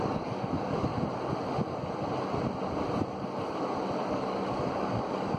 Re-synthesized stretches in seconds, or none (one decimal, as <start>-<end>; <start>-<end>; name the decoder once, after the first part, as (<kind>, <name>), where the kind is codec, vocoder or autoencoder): 0.0-0.9 (codec, DAC); 4.1-5.4